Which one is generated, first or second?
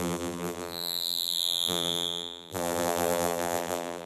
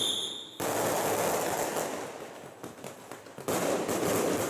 first